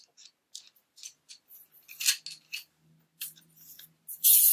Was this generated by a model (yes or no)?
no